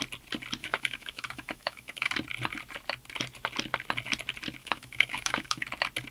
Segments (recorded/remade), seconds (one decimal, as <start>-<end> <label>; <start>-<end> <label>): 0.0-0.6 recorded; 0.6-2.1 remade; 2.1-4.6 recorded; 4.6-5.6 remade; 5.6-6.1 recorded